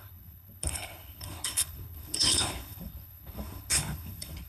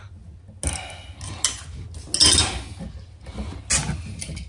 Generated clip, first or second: first